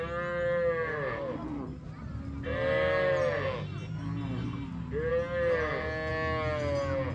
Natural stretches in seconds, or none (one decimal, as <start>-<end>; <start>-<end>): 0.0-7.1